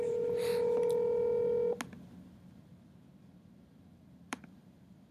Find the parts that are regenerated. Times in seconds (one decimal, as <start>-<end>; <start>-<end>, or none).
0.0-0.5; 3.6-5.1